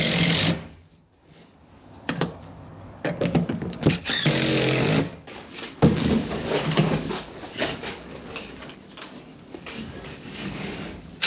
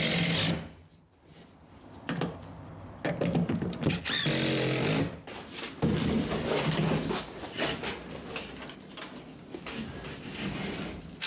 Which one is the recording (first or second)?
second